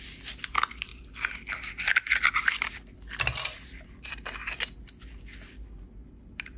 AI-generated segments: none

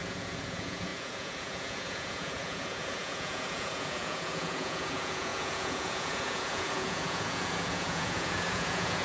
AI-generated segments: 0.0-9.0 (vocoder, Vocos)

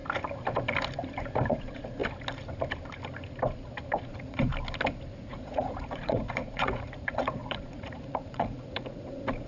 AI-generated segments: 1.5-2.0 (vocoder, Vocos); 4.1-4.5; 5.2-9.5

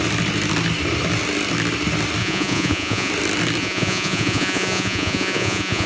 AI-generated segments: 2.2-3.1 (vocoder, Vocos); 3.6-5.9

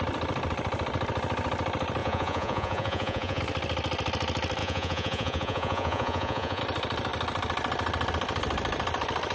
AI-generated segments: 2.0-3.4 (vocoder, Vocos); 4.6-6.6

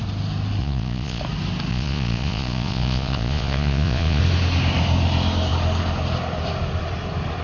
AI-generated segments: 0.6-1.2 (vocoder, Vocos); 1.7-4.2

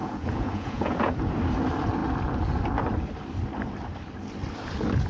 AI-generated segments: 0.0-1.2 (vocoder, Vocos)